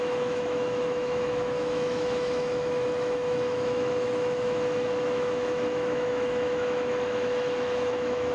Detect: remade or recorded remade